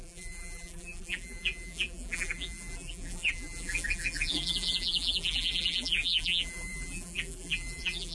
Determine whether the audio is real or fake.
fake